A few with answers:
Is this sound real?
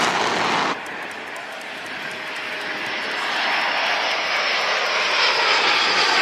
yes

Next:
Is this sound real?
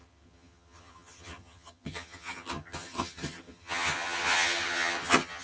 no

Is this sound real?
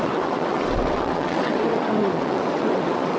no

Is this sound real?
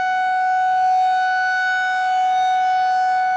yes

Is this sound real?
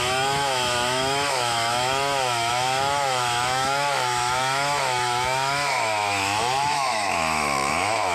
no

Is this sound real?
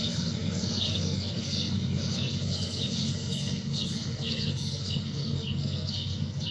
no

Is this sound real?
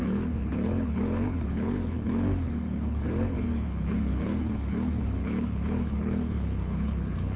no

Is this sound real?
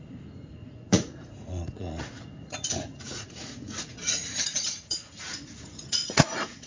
no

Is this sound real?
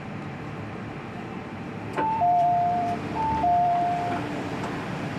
no